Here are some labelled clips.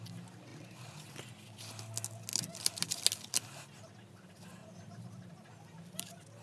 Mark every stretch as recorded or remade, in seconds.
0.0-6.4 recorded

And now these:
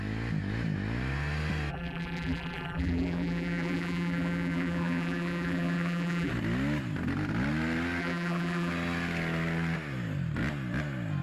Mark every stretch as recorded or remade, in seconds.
0.0-1.7 recorded; 1.7-6.3 remade; 6.3-8.0 recorded; 8.0-8.7 remade; 8.7-11.2 recorded